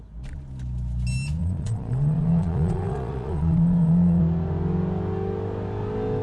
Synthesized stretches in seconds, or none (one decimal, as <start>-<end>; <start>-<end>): 1.4-4.2